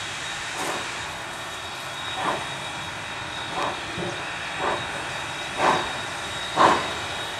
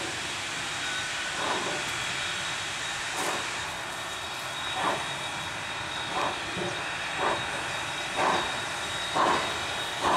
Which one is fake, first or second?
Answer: second